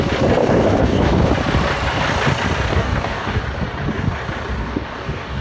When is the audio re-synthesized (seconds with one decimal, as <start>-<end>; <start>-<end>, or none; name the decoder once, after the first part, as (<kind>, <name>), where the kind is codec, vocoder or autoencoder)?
0.4-1.3 (codec, DAC); 2.7-3.4; 4.6-5.4